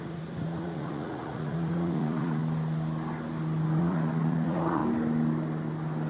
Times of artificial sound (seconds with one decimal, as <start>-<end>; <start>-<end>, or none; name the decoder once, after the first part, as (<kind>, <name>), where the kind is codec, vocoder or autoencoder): 0.0-2.4 (vocoder, Vocos); 3.8-4.8

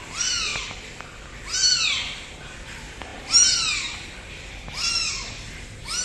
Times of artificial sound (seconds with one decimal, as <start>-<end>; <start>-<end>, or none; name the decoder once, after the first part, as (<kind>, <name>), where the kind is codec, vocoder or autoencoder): none

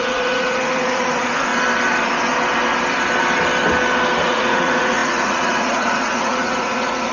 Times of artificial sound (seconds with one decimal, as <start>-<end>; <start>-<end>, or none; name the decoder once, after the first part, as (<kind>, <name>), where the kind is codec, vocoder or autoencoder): 0.0-1.5 (vocoder, Vocos); 4.2-7.1

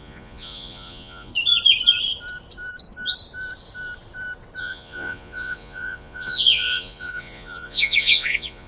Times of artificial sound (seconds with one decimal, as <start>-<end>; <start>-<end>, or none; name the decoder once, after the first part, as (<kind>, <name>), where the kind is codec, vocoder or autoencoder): 0.0-1.3 (vocoder, Vocos); 4.6-8.7

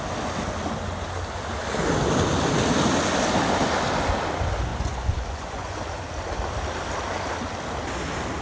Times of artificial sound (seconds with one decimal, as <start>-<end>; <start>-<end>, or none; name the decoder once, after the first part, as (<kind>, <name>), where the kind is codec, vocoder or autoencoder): 4.7-5.9 (vocoder, Vocos)